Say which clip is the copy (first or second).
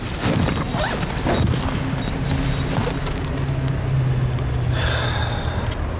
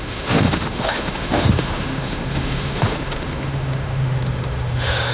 second